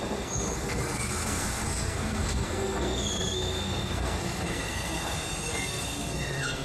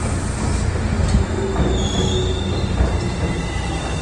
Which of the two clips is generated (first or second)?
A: first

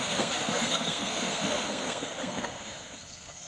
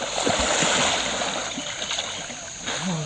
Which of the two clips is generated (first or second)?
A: first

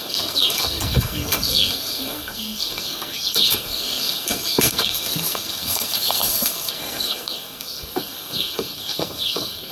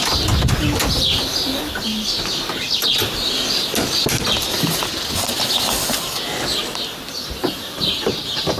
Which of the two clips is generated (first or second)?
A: first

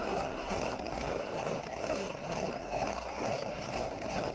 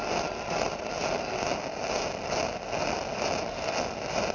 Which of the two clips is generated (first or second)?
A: first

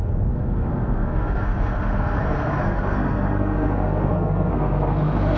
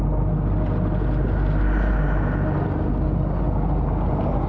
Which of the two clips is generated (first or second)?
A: first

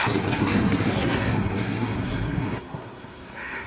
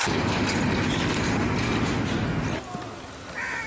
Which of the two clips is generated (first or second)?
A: first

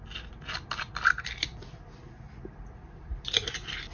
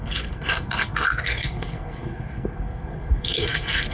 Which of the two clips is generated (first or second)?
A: second